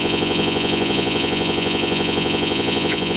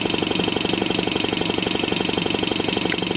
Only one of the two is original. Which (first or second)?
second